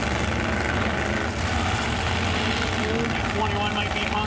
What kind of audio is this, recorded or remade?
recorded